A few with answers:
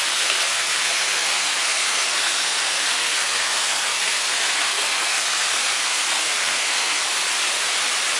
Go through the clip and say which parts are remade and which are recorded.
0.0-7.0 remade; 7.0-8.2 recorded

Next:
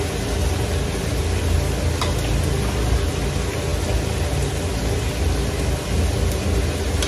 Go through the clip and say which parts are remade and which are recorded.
0.0-7.1 recorded

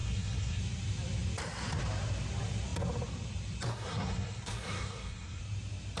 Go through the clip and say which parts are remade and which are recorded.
0.0-0.6 remade; 0.6-3.7 recorded; 3.7-5.4 remade; 5.4-6.0 recorded

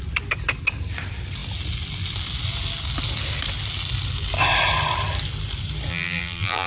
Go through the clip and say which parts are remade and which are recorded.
0.0-5.9 recorded; 5.9-6.7 remade

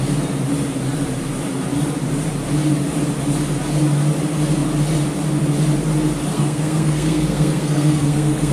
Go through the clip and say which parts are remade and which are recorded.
0.0-6.3 recorded; 6.3-8.5 remade

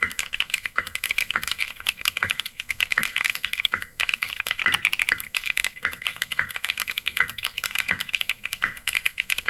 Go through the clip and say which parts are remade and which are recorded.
0.0-4.6 remade; 4.6-5.1 recorded; 5.1-9.5 remade